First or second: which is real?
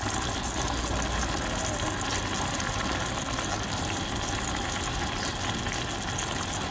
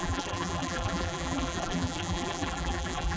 first